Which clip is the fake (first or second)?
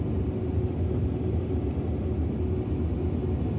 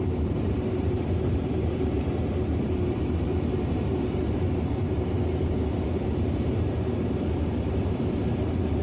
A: second